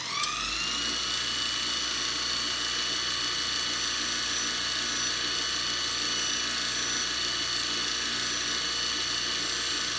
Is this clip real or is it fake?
real